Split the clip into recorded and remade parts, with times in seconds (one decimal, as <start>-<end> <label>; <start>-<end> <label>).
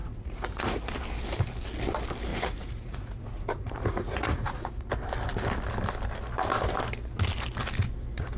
0.0-0.9 remade; 0.9-2.3 recorded; 2.3-4.8 remade; 4.8-8.4 recorded